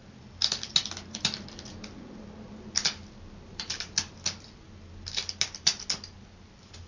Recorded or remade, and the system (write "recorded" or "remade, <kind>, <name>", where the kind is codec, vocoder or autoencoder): recorded